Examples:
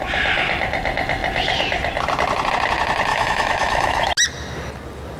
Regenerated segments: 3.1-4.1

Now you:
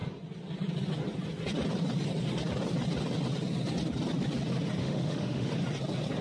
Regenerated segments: 4.8-5.5

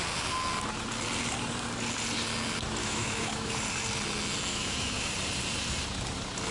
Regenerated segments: 2.8-3.5; 4.5-5.1

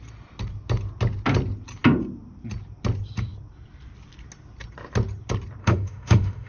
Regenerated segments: 5.6-6.5

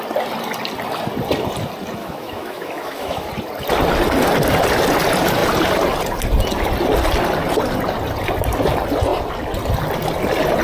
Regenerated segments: 2.0-3.3